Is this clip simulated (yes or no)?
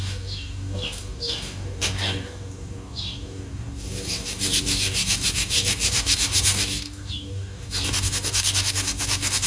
yes